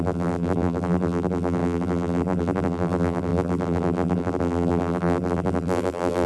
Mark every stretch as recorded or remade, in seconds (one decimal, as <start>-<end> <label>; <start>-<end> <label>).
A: 0.0-6.3 remade

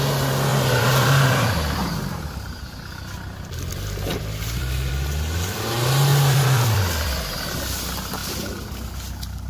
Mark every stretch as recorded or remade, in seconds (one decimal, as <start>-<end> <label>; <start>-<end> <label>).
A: 0.0-0.5 recorded; 0.5-4.9 remade; 4.9-6.1 recorded; 6.1-7.2 remade; 7.2-8.2 recorded; 8.2-8.7 remade; 8.7-9.5 recorded

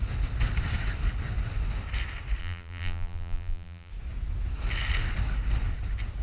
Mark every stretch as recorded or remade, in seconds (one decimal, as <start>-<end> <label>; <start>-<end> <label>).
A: 0.0-2.4 recorded; 2.4-3.9 remade; 3.9-6.2 recorded

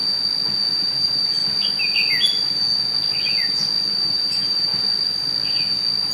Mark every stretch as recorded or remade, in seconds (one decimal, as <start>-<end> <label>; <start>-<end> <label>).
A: 0.0-0.7 recorded; 0.7-1.4 remade; 1.4-3.9 recorded; 3.9-4.7 remade; 4.7-6.1 recorded

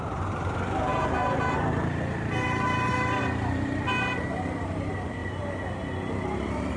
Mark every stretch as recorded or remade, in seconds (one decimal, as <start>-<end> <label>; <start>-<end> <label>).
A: 0.0-5.2 remade; 5.2-6.2 recorded; 6.2-6.8 remade

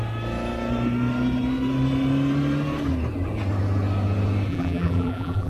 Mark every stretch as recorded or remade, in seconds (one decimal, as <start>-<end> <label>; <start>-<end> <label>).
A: 0.0-4.5 recorded; 4.5-5.5 remade